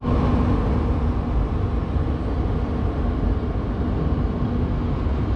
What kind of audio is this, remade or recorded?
recorded